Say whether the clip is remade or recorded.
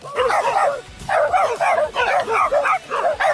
recorded